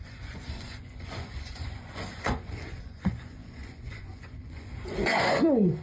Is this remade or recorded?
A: remade